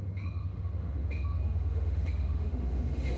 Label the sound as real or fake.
fake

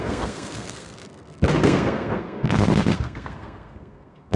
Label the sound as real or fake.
fake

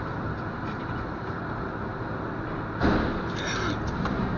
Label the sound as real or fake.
real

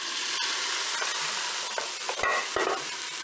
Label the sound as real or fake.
real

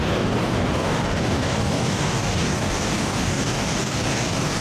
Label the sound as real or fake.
fake